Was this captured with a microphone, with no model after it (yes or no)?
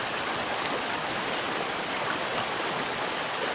yes